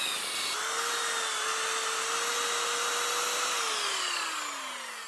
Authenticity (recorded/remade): recorded